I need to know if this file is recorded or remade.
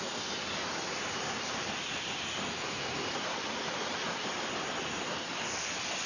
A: recorded